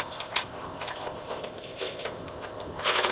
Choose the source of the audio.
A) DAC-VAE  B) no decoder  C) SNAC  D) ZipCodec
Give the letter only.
D